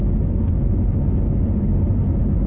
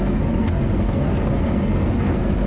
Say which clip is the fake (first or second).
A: second